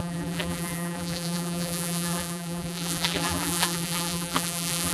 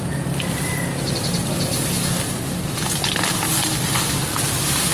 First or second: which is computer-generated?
first